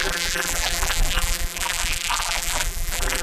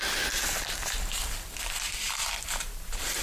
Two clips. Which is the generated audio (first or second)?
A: first